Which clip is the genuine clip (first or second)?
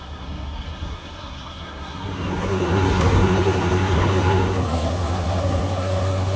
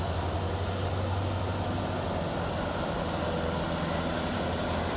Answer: second